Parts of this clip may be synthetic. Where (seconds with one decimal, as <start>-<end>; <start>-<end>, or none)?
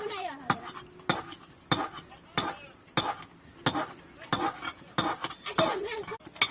none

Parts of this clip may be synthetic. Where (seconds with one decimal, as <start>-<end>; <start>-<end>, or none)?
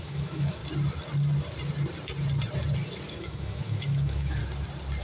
0.0-0.6; 3.1-4.4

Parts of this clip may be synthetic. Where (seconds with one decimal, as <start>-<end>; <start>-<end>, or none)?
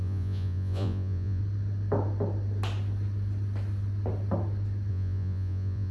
0.0-1.4; 4.9-5.9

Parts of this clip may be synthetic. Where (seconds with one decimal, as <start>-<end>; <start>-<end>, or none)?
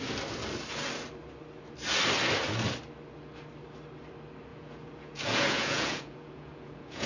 4.5-7.1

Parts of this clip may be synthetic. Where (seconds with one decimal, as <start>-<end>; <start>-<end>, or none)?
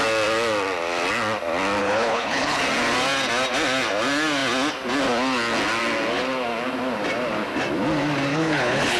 1.8-2.6; 8.3-9.0